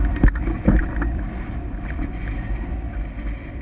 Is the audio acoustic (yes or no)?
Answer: no